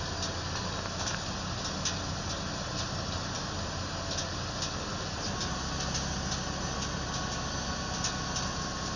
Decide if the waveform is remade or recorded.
recorded